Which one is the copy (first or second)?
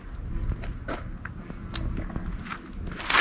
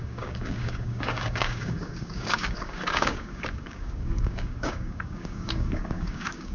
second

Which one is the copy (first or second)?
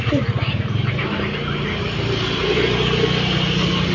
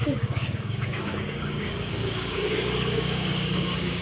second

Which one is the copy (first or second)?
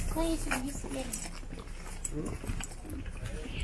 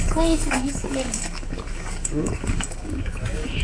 second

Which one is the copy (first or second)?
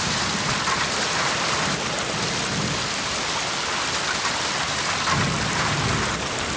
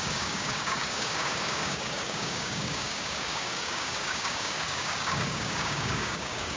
second